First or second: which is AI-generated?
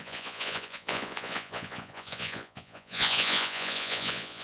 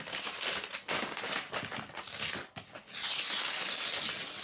first